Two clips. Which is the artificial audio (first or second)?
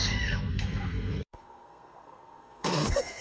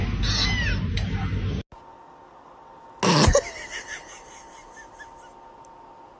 first